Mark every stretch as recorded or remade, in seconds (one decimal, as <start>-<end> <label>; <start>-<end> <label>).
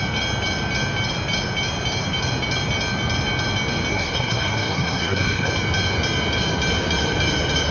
0.0-3.9 recorded; 3.9-5.5 remade; 5.5-7.7 recorded